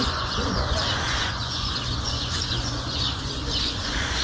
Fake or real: fake